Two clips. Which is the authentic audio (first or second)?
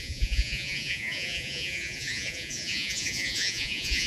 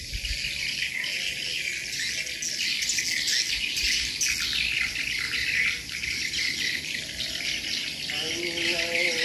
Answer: second